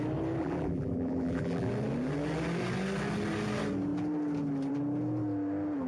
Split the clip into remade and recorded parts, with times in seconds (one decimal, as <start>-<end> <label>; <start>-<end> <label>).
0.0-0.4 recorded; 0.4-1.7 remade; 1.7-5.9 recorded